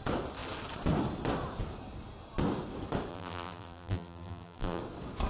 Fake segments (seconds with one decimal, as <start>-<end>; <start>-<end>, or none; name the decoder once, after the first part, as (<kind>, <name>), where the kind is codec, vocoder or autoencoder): 3.1-4.8 (vocoder, BigVGAN v2)